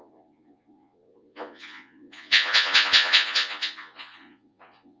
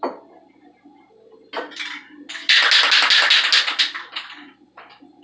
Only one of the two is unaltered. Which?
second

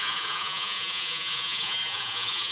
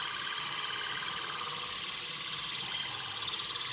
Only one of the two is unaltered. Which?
second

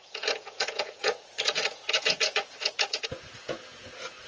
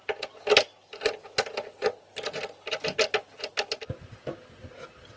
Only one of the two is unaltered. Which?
second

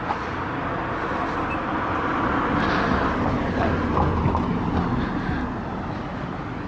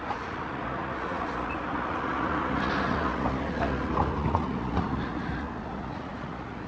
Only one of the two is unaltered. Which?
first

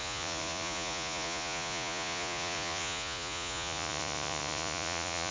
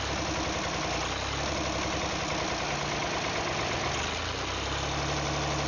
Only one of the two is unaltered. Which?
second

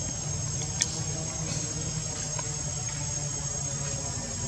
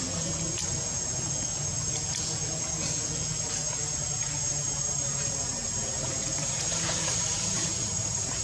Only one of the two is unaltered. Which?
first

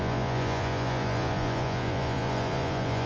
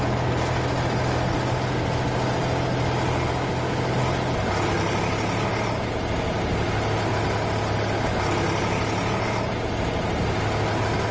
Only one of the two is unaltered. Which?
second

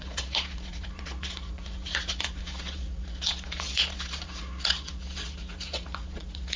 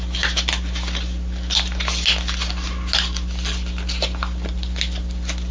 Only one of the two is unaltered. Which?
second